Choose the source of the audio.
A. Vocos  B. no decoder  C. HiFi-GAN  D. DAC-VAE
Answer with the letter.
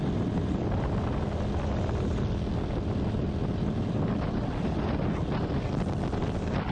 B